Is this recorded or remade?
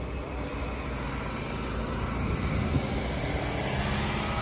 recorded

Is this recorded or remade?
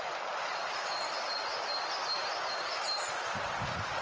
recorded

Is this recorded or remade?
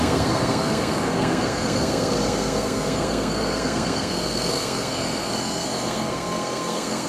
remade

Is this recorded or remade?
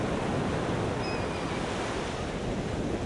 recorded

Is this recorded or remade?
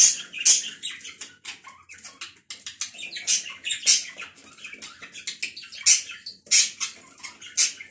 recorded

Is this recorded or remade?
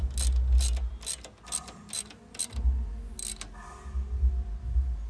recorded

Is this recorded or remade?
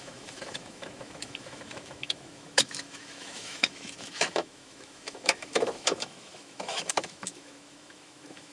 remade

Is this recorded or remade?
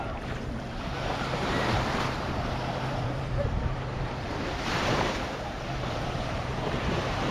remade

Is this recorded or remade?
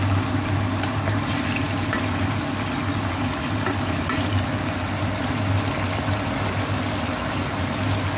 recorded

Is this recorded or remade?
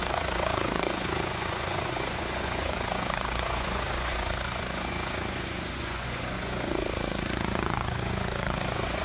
remade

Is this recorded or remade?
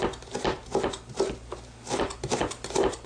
recorded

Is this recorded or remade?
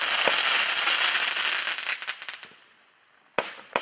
recorded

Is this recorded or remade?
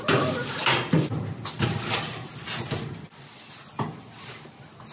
recorded